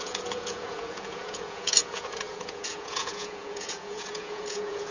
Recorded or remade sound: remade